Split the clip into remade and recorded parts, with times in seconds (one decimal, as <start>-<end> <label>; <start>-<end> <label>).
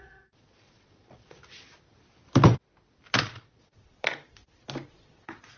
0.0-1.4 remade; 1.4-3.2 recorded; 3.2-4.4 remade; 4.4-4.9 recorded; 4.9-5.6 remade